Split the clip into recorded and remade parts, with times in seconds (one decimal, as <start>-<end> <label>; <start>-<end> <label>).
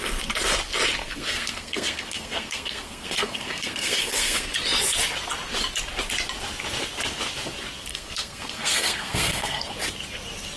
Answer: 0.0-1.0 recorded; 1.0-4.5 remade; 4.5-7.9 recorded; 7.9-9.7 remade; 9.7-10.6 recorded